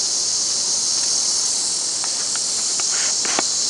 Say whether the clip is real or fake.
real